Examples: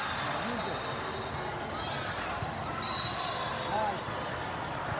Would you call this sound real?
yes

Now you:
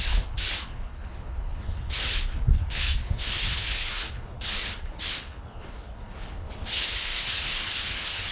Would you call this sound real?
no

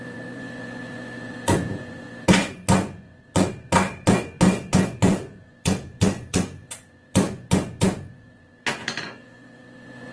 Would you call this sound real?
no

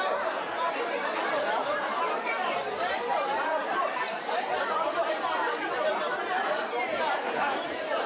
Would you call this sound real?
no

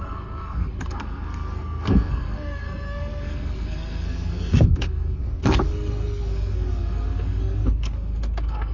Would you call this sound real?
no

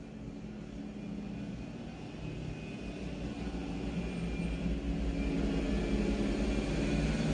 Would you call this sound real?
yes